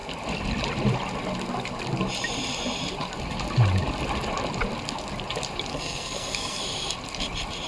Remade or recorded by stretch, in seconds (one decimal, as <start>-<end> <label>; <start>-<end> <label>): 0.0-5.7 recorded; 5.7-6.6 remade; 6.6-7.7 recorded